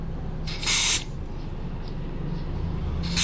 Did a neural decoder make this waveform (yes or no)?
no